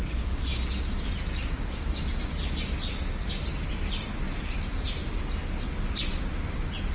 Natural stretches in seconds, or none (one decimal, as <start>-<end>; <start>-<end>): 0.0-6.9